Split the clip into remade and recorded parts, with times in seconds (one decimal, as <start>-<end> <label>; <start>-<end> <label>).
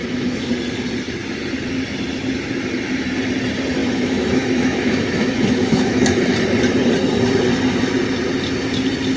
0.0-0.5 remade; 0.5-3.8 recorded; 3.8-6.2 remade; 6.2-9.2 recorded